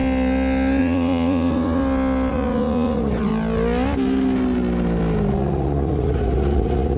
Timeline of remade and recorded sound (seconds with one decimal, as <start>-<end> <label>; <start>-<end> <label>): 0.0-0.8 recorded; 0.8-1.8 remade; 1.8-2.3 recorded; 2.3-3.3 remade; 3.3-5.3 recorded; 5.3-7.0 remade